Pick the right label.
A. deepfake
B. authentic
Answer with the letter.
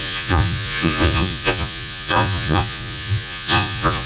A